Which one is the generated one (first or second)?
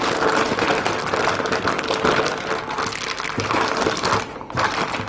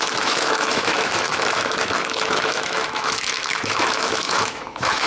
second